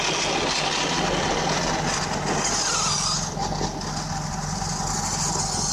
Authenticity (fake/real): real